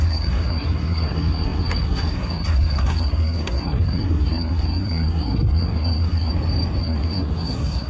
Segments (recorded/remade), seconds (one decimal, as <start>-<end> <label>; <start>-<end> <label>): 0.0-6.3 remade; 6.3-6.8 recorded; 6.8-7.9 remade